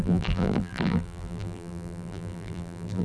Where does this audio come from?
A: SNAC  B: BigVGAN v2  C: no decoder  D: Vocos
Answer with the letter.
B